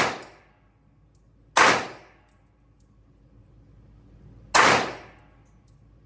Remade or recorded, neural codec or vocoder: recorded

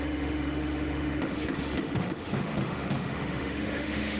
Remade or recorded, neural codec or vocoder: remade, autoencoder, DAC-VAE